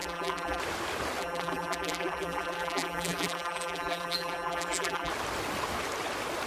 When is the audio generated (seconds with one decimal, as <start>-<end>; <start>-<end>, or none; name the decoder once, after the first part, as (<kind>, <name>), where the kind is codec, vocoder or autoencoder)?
0.0-0.6 (vocoder, BigVGAN v2); 1.2-5.1